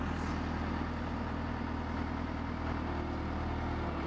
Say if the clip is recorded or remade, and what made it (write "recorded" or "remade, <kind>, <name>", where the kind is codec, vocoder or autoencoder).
recorded